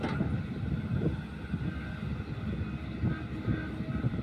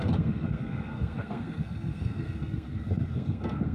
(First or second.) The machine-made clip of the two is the second